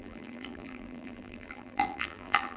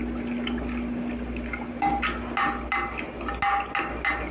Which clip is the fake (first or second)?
first